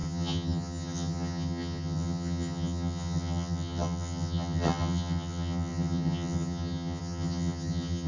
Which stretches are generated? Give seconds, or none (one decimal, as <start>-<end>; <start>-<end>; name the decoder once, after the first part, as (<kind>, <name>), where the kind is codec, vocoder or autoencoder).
0.0-8.1 (vocoder, HiFi-GAN)